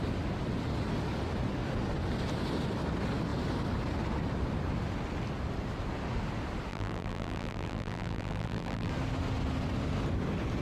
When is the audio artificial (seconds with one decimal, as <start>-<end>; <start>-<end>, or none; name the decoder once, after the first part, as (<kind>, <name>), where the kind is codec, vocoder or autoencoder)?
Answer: 6.7-8.9 (vocoder, BigVGAN v2)

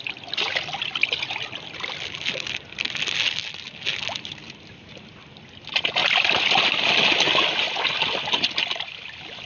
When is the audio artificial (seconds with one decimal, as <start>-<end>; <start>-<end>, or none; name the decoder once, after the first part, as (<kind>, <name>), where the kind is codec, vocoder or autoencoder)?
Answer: none

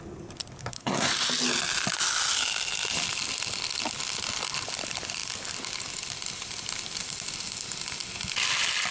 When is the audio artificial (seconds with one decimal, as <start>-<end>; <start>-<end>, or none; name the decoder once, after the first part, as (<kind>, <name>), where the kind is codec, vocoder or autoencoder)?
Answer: 0.6-1.1 (codec, SNAC)

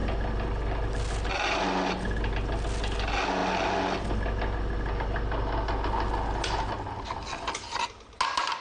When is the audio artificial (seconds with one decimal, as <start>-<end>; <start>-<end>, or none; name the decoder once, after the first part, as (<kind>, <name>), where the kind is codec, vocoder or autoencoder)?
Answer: none

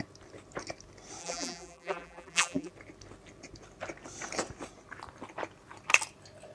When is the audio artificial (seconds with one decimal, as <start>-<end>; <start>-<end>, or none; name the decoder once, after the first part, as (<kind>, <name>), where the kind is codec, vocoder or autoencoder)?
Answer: 1.2-2.7 (vocoder, BigVGAN v2)